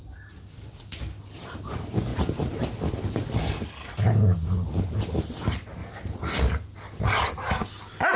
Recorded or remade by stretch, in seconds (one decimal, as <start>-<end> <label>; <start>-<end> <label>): 0.0-8.2 recorded